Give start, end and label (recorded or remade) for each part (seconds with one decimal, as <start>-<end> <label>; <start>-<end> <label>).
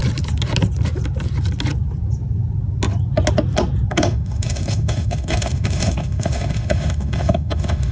0.0-3.9 recorded; 3.9-7.9 remade